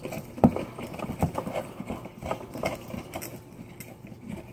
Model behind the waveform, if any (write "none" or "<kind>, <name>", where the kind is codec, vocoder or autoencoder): none